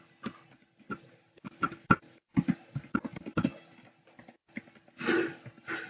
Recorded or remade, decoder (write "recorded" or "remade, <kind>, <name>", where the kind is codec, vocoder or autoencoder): recorded